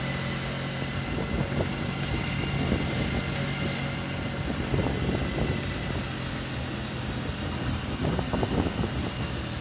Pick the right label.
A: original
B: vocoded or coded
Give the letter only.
A